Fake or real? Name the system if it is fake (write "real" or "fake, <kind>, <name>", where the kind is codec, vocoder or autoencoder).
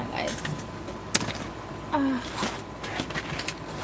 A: real